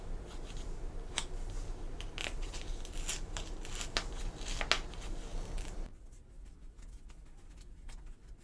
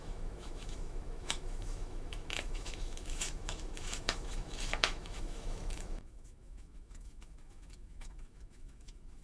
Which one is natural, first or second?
first